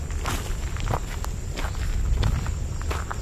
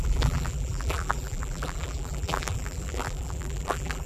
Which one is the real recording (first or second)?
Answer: first